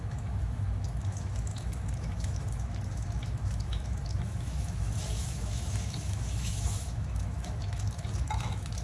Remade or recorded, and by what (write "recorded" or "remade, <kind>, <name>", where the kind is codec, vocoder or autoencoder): remade, autoencoder, DAC-VAE